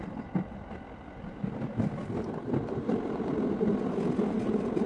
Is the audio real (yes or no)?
yes